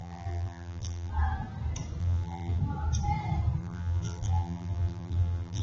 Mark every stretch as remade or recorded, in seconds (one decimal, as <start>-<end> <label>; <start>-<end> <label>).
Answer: 0.0-1.1 remade; 1.1-2.0 recorded; 2.0-2.6 remade; 2.6-3.6 recorded; 3.6-5.6 remade